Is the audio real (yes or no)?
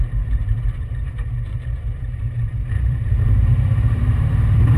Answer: no